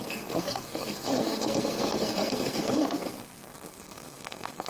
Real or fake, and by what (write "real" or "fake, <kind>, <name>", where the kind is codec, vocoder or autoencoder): fake, codec, SNAC